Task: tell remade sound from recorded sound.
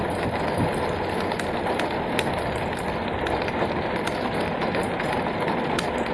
recorded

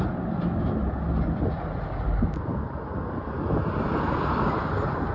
recorded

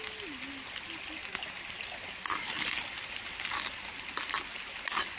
recorded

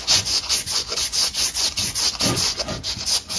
remade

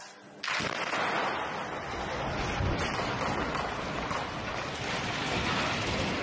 recorded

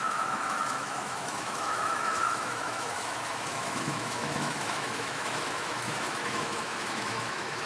remade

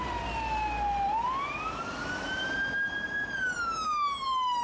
recorded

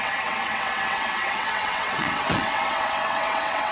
remade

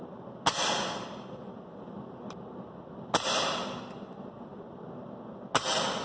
recorded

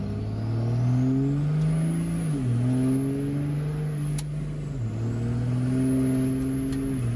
recorded